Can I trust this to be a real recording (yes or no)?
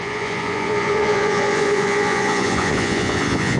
no